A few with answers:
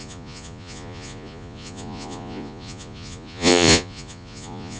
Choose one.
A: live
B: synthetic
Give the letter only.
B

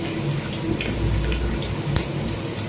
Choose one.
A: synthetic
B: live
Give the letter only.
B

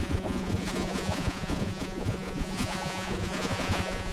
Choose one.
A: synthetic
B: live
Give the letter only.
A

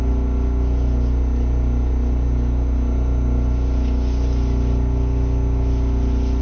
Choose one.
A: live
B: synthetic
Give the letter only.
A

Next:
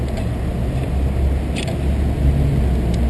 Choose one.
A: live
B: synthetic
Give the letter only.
A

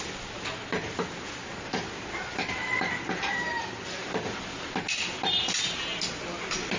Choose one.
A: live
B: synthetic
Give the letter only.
A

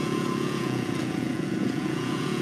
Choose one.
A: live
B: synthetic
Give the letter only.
B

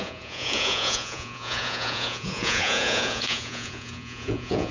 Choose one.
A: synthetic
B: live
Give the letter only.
A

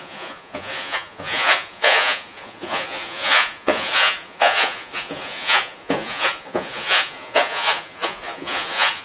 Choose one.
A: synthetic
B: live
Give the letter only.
A